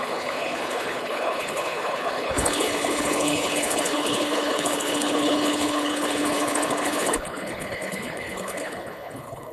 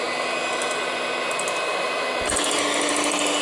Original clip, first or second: second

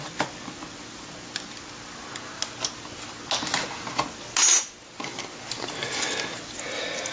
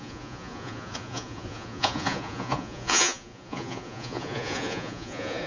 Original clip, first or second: first